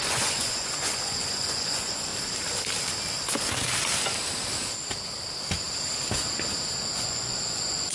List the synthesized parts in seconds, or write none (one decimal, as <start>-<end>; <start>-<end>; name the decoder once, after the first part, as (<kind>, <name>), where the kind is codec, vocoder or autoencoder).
0.0-2.1 (vocoder, Vocos); 6.8-7.9